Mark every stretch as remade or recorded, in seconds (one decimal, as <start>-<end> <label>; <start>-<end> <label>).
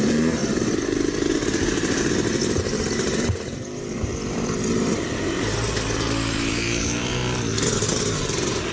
0.0-0.4 remade; 0.4-3.2 recorded; 3.2-4.1 remade; 4.1-4.9 recorded; 4.9-7.2 remade; 7.2-7.7 recorded; 7.7-8.7 remade